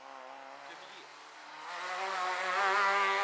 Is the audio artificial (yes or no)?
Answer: no